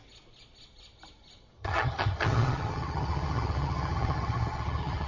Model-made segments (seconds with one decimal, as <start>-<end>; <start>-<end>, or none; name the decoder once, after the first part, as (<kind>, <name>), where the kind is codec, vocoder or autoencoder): 1.6-5.1 (vocoder, HiFi-GAN)